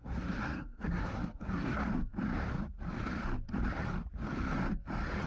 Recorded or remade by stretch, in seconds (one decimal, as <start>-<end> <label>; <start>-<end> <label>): 0.0-1.8 remade; 1.8-5.3 recorded